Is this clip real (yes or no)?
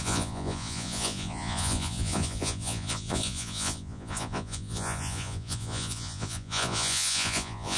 no